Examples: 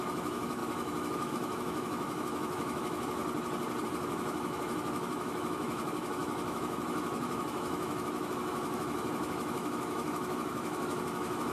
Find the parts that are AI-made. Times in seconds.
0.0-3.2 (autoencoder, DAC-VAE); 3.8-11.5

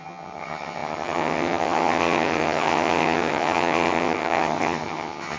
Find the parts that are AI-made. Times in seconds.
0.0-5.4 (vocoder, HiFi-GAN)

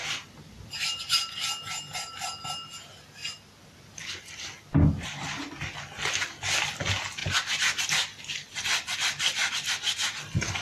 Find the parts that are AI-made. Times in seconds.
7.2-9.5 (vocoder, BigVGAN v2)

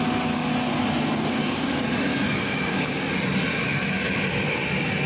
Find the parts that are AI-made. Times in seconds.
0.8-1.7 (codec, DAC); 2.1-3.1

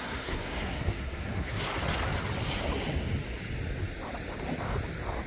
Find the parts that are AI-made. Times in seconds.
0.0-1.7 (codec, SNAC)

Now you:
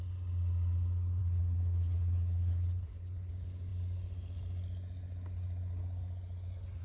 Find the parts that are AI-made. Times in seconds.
1.2-3.3 (codec, HILCodec)

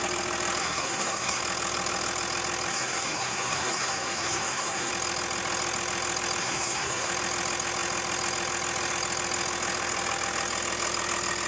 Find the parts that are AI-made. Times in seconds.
0.6-1.4 (codec, SNAC); 2.7-4.9; 6.4-7.1